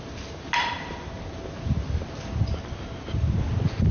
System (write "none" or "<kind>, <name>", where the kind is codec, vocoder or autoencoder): none